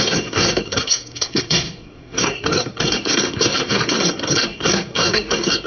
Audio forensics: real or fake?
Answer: fake